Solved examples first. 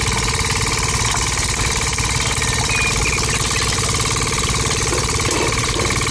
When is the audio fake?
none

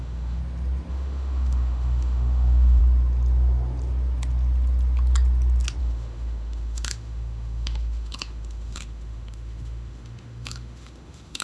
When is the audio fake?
0.0-0.4; 0.9-2.8; 5.8-11.4

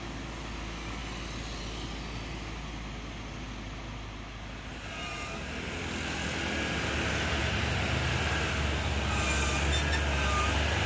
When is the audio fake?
none

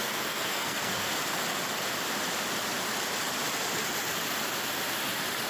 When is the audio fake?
0.0-1.1